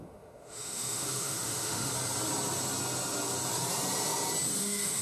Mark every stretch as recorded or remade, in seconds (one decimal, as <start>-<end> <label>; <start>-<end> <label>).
0.0-1.9 remade; 1.9-4.6 recorded; 4.6-5.0 remade